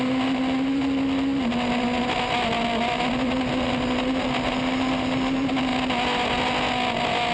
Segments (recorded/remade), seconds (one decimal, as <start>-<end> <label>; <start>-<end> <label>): 0.0-7.3 recorded